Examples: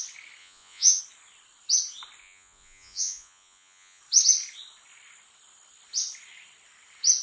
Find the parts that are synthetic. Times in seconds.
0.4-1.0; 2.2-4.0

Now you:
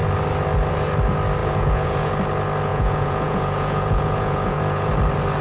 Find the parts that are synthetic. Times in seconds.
1.4-2.1; 2.7-4.9

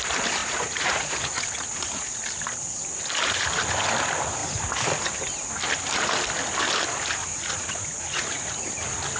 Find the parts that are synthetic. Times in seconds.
0.4-2.2; 7.2-8.6

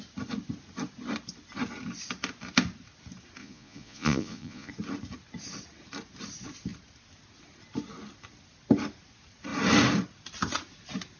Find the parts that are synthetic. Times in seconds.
3.4-4.7

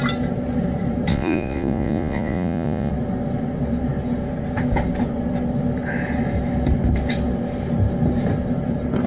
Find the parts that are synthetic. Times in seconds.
1.1-2.9

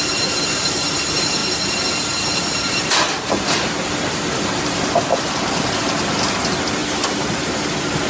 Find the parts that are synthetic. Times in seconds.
none